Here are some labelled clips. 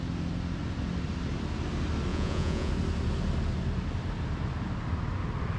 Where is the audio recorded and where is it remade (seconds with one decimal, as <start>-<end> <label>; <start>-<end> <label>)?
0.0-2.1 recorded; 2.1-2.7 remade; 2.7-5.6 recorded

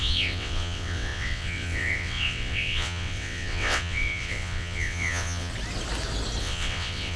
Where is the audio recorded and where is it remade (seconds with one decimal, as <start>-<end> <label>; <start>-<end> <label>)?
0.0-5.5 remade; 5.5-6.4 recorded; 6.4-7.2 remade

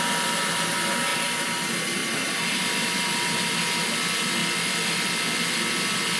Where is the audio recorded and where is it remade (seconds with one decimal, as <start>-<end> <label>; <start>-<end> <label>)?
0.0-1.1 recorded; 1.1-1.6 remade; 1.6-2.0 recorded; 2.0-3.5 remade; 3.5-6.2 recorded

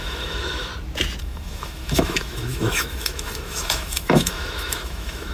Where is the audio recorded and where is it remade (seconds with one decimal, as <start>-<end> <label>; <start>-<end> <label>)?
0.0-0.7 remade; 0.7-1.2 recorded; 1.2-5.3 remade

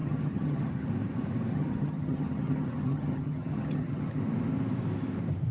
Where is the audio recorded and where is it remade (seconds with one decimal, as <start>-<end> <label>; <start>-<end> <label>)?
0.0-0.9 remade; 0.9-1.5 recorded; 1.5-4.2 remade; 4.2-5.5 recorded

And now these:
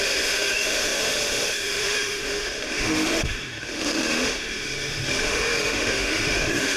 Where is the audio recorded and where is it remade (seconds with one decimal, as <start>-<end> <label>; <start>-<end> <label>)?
0.0-6.8 remade